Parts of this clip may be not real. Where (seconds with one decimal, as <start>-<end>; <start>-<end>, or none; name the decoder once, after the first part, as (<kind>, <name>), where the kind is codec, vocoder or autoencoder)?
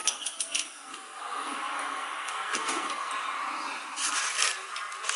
0.0-3.1 (codec, SNAC)